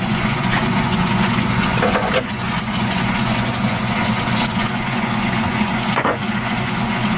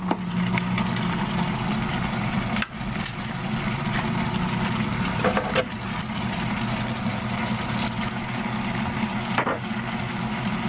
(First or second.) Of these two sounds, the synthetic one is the first